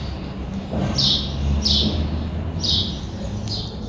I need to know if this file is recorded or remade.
recorded